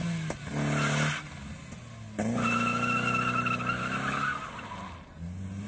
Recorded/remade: recorded